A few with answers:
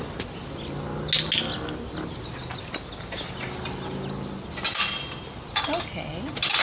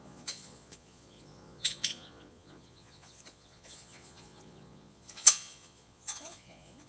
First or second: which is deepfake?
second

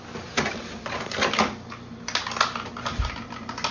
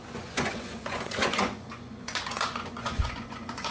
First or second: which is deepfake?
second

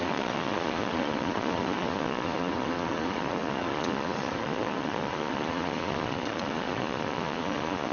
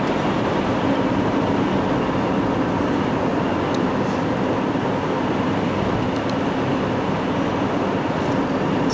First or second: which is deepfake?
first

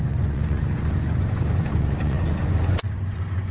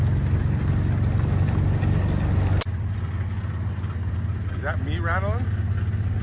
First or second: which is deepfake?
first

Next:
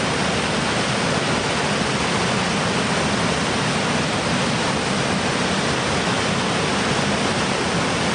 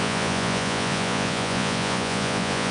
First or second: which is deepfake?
second